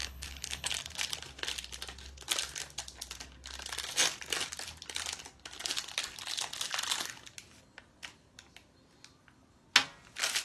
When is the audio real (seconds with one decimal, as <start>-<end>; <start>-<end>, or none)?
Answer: 0.7-10.4